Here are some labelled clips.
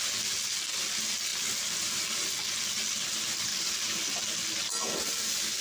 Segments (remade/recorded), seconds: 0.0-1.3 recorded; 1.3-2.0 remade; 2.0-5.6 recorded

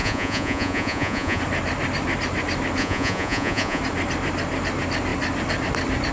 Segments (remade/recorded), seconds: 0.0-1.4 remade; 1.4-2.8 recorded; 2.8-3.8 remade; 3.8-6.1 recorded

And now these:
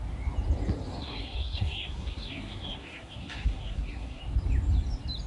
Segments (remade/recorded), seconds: 0.0-1.0 recorded; 1.0-4.2 remade; 4.2-5.3 recorded

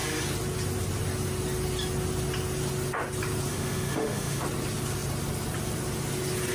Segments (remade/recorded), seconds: 0.0-3.5 recorded; 3.5-4.4 remade; 4.4-6.5 recorded

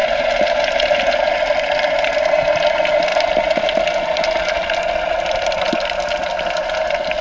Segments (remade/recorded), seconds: 0.0-7.2 recorded

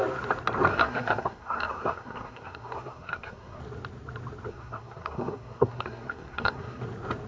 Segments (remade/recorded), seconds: 0.0-0.7 recorded; 0.7-3.6 remade; 3.6-4.5 recorded; 4.5-6.8 remade; 6.8-7.3 recorded

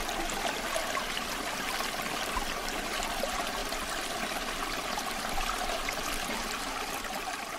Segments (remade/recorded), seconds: 0.0-7.6 recorded